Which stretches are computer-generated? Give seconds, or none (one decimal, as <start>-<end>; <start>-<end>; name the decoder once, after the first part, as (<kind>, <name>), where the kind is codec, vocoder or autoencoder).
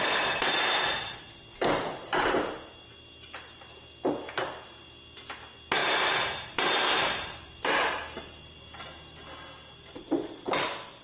none